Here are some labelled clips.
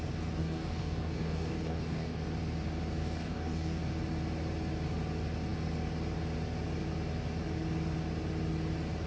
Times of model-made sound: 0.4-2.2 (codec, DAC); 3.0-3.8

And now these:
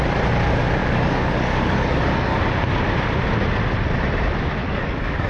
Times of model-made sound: 0.8-2.4 (codec, DAC); 4.6-5.3

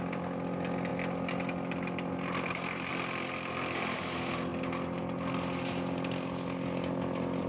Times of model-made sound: none

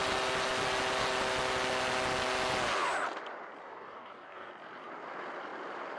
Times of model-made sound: 3.6-4.5 (codec, DAC)

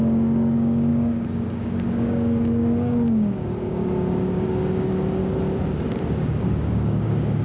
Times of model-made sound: 0.0-5.2 (codec, DAC); 6.2-7.4

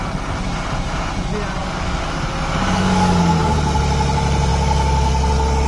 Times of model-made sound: 1.6-3.5 (codec, DAC)